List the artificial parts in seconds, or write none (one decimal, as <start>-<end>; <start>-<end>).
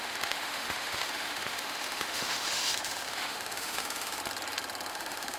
0.0-4.2; 4.9-5.4